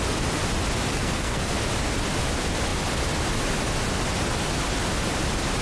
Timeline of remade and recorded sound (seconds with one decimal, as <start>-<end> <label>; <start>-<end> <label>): 0.0-0.9 recorded; 0.9-1.5 remade; 1.5-5.6 recorded